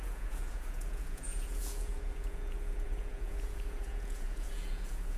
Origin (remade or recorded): remade